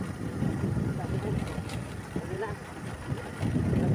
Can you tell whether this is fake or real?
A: real